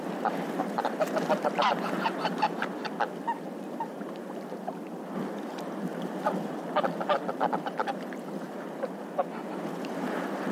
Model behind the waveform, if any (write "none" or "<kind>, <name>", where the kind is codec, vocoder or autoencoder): none